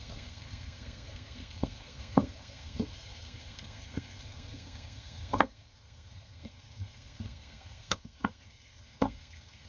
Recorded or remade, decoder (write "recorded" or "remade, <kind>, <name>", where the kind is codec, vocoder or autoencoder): remade, codec, SNAC